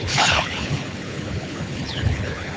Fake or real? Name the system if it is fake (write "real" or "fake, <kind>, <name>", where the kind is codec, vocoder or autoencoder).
fake, codec, HILCodec